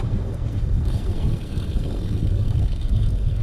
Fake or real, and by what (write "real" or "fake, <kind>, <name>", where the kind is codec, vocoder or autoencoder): fake, codec, SNAC